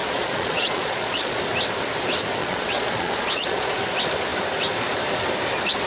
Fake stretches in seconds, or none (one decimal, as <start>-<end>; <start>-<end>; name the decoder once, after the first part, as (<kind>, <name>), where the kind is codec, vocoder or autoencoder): 0.0-1.4 (vocoder, Vocos); 2.4-3.8